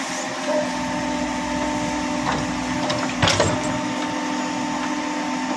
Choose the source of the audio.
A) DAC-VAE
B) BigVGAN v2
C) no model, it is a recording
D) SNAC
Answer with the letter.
C